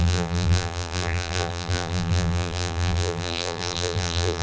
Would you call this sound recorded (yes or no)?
no